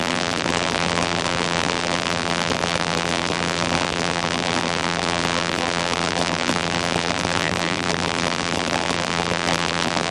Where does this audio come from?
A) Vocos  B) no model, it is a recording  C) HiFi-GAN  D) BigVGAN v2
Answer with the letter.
D